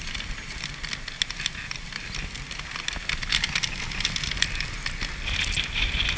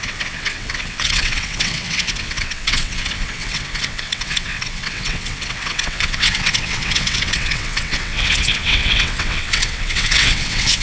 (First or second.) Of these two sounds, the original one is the first